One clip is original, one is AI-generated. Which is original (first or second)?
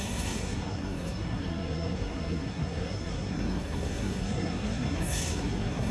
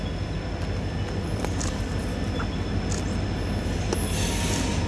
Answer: second